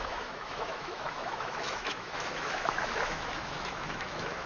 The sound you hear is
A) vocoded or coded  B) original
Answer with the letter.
A